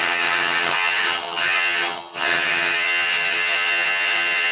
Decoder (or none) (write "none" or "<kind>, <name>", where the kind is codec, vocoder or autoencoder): vocoder, HiFi-GAN